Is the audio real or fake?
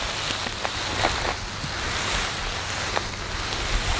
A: real